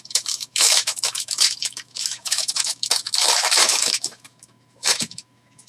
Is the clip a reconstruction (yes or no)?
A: yes